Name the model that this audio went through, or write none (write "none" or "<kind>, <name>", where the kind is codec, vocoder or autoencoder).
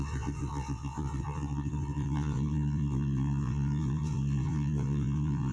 vocoder, WaveNeXt